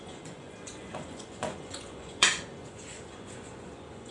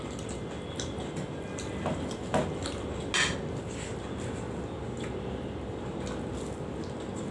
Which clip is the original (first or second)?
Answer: second